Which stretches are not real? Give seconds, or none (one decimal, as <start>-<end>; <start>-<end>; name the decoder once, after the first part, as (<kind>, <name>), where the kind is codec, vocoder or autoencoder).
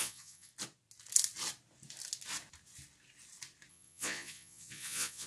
0.0-0.5 (vocoder, Vocos); 3.7-5.3